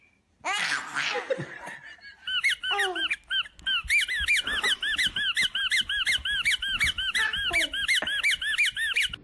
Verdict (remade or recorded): recorded